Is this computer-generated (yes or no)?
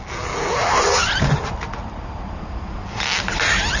no